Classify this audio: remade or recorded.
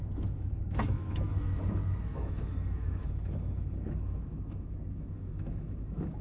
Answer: remade